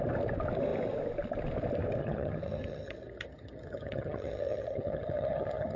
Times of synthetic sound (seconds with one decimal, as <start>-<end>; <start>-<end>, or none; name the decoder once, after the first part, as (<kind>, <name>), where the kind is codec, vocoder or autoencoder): 2.0-5.8 (vocoder, HiFi-GAN)